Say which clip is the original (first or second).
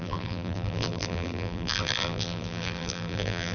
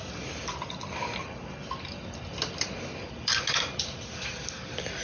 second